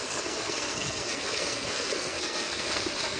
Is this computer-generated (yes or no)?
yes